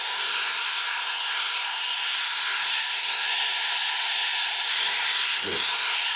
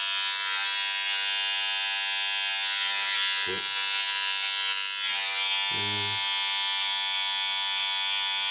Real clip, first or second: second